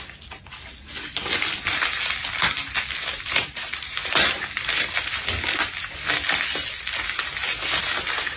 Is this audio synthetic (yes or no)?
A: no